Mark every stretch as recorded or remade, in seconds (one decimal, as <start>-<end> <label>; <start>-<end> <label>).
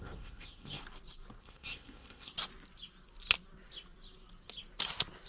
0.0-0.8 remade; 0.8-1.4 recorded; 1.4-2.3 remade; 2.3-5.3 recorded